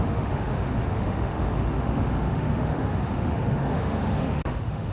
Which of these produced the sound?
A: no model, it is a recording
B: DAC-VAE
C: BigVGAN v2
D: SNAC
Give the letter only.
B